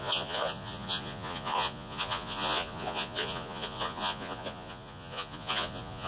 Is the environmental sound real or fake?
fake